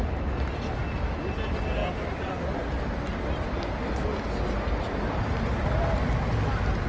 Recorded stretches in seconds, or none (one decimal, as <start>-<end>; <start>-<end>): 0.0-6.9